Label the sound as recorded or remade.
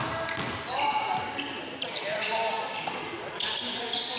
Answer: recorded